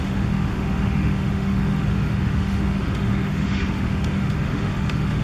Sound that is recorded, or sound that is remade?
remade